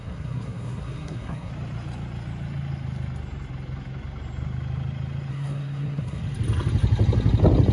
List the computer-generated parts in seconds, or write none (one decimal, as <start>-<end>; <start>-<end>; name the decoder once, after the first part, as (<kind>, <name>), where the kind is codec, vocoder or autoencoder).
0.0-1.5 (codec, SNAC); 5.3-6.2